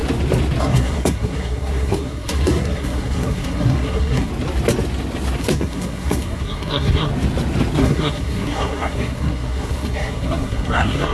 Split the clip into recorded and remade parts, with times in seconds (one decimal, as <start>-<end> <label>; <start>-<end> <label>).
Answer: 0.0-0.6 recorded; 0.6-4.3 remade; 4.3-5.4 recorded; 5.4-7.1 remade; 7.1-7.8 recorded; 7.8-11.1 remade